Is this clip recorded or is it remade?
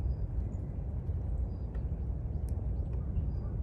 recorded